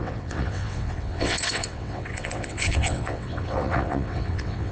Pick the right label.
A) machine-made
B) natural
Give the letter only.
A